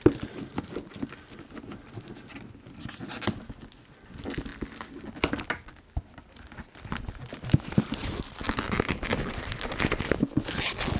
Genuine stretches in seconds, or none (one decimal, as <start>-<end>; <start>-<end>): 0.0-8.0; 10.1-11.0